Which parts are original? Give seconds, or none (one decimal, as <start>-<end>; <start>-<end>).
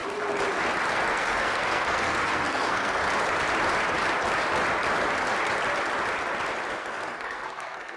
0.0-0.9; 3.0-6.7